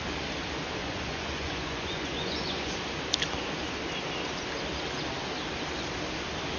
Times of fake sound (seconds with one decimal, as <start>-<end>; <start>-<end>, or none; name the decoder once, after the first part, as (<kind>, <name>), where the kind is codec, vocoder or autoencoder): 0.8-2.7 (vocoder, Vocos)